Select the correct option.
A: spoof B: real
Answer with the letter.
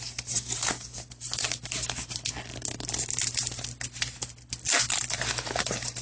B